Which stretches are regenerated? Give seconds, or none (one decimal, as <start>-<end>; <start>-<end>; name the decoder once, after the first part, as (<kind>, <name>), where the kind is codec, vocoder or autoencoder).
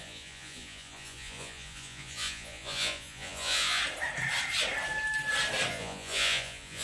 0.0-3.8 (vocoder, Vocos); 5.7-6.8